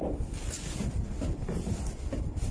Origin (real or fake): real